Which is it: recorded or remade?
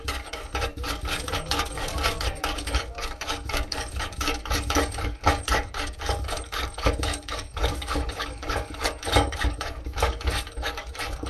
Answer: remade